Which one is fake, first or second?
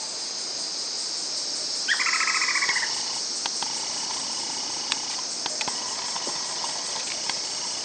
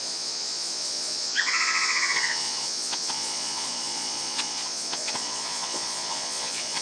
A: second